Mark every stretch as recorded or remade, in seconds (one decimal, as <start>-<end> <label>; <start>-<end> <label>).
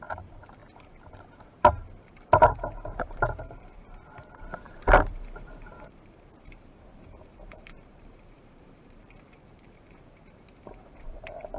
0.0-11.6 remade